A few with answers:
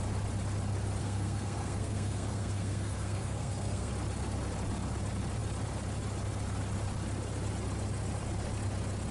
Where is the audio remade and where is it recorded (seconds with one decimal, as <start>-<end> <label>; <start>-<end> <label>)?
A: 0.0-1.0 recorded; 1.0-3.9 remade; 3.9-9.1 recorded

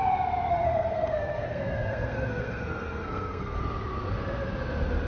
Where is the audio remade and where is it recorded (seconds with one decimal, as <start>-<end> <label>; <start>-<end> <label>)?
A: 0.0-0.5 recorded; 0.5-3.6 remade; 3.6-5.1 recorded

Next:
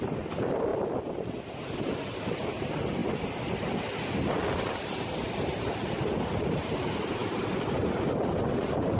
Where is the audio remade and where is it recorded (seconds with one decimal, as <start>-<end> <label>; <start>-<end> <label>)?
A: 0.0-9.0 recorded